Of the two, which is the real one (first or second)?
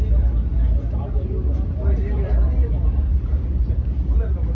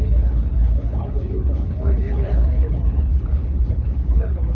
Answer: first